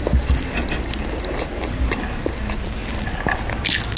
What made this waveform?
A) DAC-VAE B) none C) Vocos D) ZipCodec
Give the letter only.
B